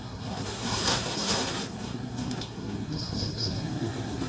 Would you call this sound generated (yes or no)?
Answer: yes